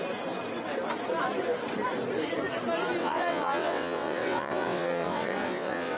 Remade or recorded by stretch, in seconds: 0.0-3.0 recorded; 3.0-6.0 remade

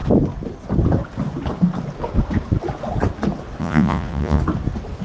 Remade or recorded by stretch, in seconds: 0.0-3.6 recorded; 3.6-4.4 remade; 4.4-5.0 recorded

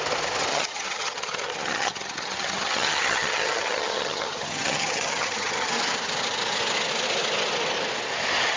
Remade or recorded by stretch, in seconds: 0.0-0.5 recorded; 0.5-5.7 remade; 5.7-8.6 recorded

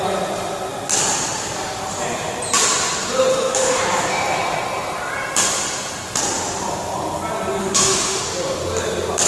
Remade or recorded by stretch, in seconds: 0.0-3.3 recorded; 3.3-3.8 remade; 3.8-7.6 recorded; 7.6-8.2 remade; 8.2-9.3 recorded

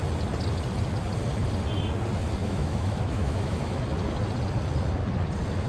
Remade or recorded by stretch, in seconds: 0.0-2.4 recorded; 2.4-3.8 remade; 3.8-5.7 recorded

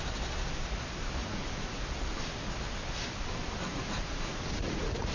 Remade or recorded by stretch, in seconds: 0.0-1.2 recorded; 1.2-1.8 remade; 1.8-3.7 recorded; 3.7-5.1 remade

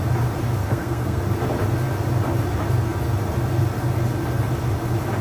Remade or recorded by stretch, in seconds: 0.0-0.6 recorded; 0.6-1.2 remade; 1.2-5.2 recorded